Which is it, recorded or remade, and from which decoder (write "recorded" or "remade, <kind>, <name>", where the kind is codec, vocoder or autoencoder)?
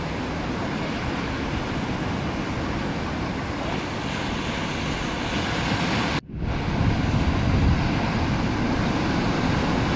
recorded